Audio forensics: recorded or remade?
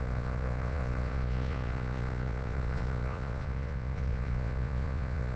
remade